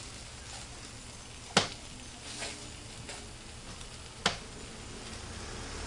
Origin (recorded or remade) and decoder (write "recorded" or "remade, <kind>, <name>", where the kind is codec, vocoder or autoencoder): recorded